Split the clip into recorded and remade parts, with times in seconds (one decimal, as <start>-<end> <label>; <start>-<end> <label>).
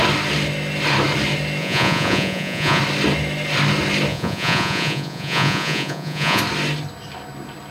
0.0-1.6 recorded; 1.6-2.8 remade; 2.8-4.1 recorded; 4.1-6.4 remade; 6.4-7.7 recorded